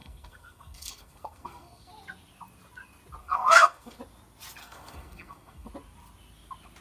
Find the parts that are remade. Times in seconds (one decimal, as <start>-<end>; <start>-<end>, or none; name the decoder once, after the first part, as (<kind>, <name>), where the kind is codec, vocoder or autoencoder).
0.0-1.9 (codec, SNAC); 3.2-4.0; 4.6-5.7